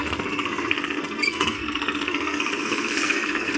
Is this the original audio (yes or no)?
no